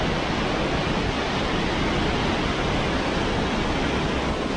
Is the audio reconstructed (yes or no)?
no